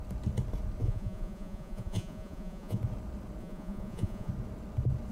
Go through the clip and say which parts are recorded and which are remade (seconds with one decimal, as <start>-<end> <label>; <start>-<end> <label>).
0.0-0.8 recorded; 0.8-2.8 remade; 2.8-3.4 recorded; 3.4-4.3 remade; 4.3-5.1 recorded